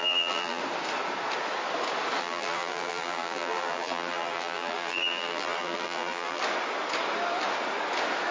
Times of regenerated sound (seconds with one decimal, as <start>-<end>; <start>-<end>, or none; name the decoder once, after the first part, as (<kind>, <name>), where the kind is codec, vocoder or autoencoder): 0.0-0.6 (vocoder, BigVGAN v2); 2.2-6.4